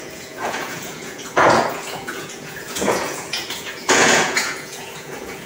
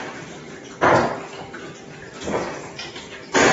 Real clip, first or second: second